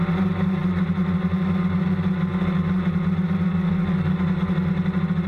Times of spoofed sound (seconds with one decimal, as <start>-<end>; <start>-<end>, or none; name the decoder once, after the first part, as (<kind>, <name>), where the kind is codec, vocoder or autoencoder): none